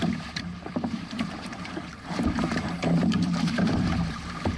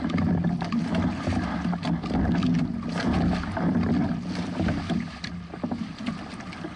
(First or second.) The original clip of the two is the second